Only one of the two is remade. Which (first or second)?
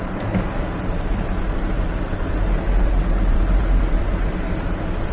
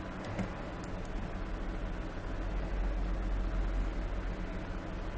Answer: first